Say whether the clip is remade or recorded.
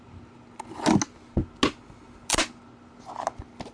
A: recorded